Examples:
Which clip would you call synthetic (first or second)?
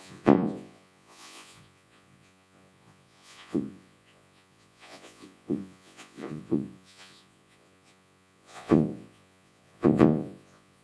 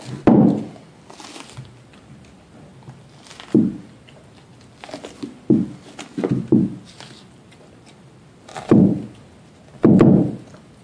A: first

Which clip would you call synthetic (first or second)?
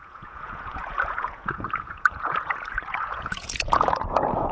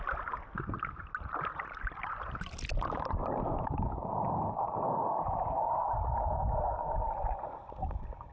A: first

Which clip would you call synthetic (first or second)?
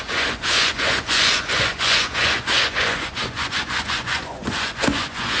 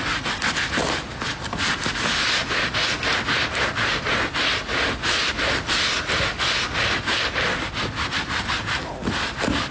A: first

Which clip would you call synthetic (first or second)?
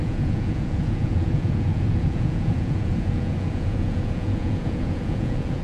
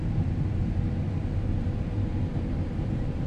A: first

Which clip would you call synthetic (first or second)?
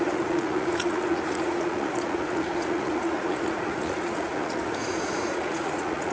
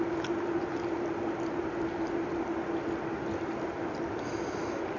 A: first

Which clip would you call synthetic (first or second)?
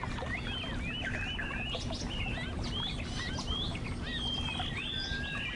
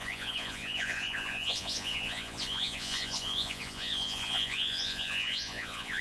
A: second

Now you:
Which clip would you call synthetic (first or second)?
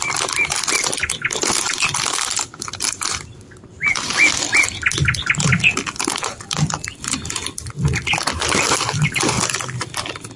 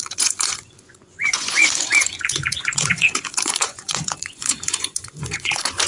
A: second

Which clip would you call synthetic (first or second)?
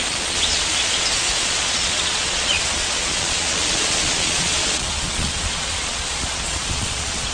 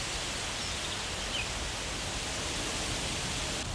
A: first